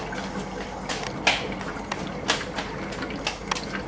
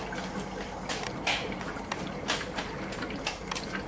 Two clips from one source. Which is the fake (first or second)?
second